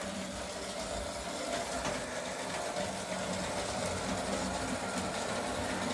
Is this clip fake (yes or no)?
no